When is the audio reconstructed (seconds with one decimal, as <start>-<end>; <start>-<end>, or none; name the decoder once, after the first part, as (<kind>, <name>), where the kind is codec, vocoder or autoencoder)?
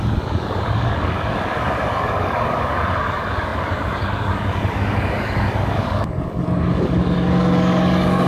0.0-8.3 (codec, DAC)